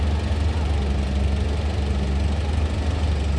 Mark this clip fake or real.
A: real